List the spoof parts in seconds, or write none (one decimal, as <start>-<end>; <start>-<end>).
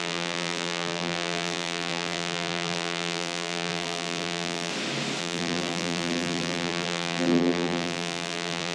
0.0-4.7; 5.2-8.7